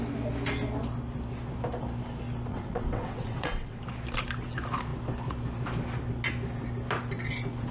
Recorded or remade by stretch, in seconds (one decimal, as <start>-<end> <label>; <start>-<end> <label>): 0.0-2.5 recorded; 2.5-3.8 remade; 3.8-7.7 recorded